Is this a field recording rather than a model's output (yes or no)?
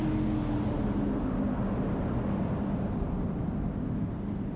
yes